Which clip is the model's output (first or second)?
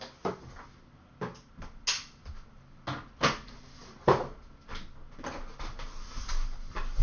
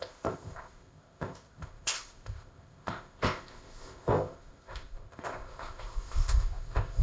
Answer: second